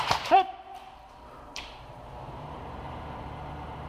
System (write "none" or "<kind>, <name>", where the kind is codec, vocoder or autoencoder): vocoder, BigVGAN v2